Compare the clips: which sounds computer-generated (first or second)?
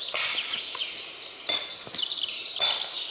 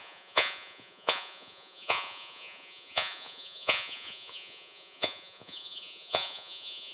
second